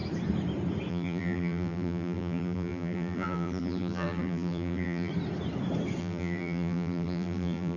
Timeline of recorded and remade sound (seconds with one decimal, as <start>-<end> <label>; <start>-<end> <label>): 0.0-0.9 recorded; 0.9-5.1 remade; 5.1-6.0 recorded; 6.0-7.8 remade

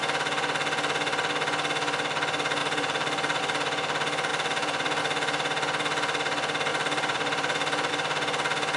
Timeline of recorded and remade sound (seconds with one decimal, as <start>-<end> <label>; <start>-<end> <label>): 0.0-2.6 recorded; 2.6-3.4 remade; 3.4-4.3 recorded; 4.3-5.0 remade; 5.0-6.7 recorded; 6.7-7.9 remade; 7.9-8.8 recorded